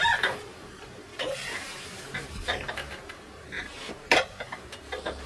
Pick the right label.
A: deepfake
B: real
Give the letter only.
A